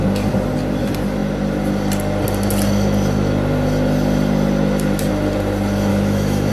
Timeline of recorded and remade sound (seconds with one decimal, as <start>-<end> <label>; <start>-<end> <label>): 0.0-5.9 recorded; 5.9-6.5 remade